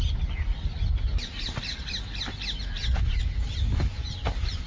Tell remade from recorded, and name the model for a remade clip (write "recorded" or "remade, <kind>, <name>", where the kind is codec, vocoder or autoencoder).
recorded